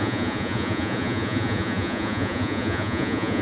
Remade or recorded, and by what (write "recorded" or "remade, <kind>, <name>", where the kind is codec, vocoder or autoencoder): remade, vocoder, Vocos